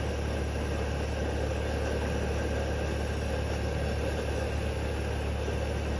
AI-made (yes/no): no